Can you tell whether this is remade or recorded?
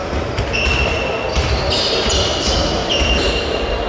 recorded